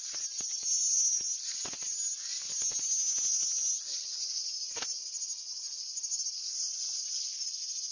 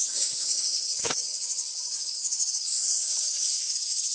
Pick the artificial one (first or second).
second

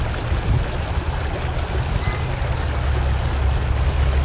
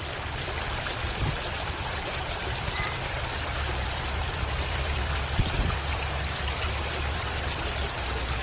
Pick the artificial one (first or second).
second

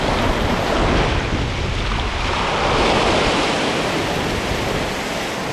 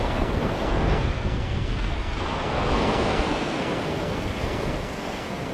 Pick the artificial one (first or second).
second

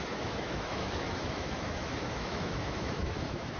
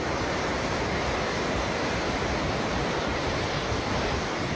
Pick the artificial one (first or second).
first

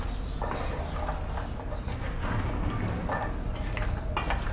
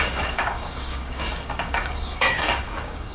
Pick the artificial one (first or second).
second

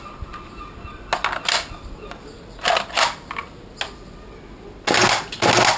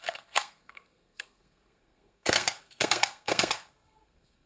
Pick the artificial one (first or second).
second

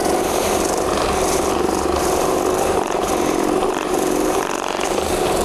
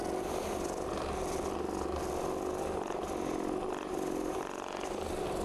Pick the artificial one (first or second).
first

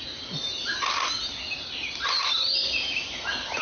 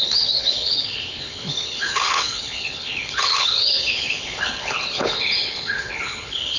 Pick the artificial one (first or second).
second